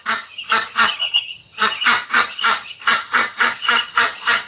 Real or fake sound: fake